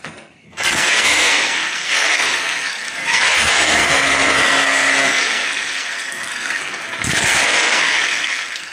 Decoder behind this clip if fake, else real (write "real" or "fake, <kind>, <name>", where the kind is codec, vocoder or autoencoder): fake, codec, SNAC